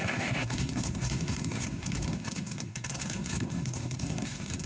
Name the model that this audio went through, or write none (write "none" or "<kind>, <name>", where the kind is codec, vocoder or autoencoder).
codec, SNAC